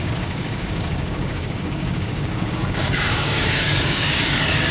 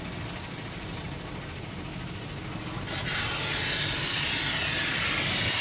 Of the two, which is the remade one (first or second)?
first